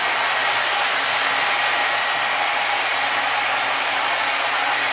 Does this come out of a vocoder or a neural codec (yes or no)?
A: no